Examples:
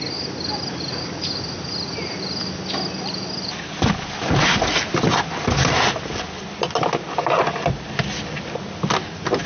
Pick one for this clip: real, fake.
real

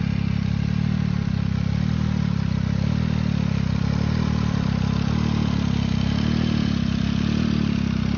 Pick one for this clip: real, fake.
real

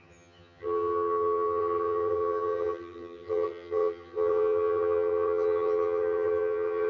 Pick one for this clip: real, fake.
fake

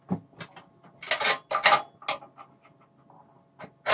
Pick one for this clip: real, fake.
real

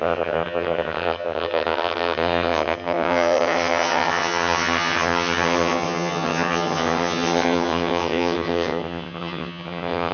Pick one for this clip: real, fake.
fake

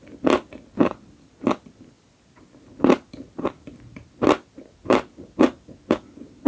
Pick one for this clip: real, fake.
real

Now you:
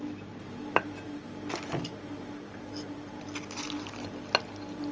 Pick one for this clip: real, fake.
real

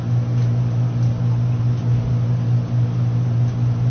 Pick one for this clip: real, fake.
real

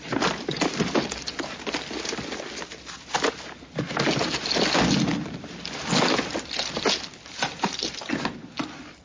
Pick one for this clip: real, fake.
real